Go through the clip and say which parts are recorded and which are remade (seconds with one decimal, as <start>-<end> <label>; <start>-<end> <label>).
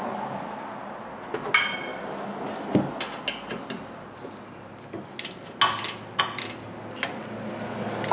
0.0-8.1 recorded